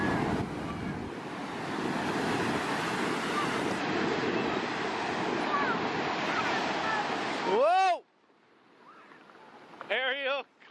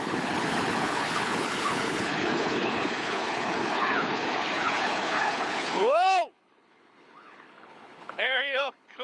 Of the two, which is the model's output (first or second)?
second